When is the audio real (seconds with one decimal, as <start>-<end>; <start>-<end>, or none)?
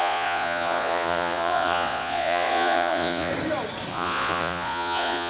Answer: 3.3-3.9